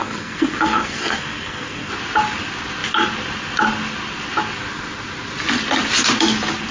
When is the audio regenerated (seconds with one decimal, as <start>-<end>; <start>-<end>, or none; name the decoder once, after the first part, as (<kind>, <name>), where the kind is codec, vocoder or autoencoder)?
0.0-1.9 (codec, SNAC)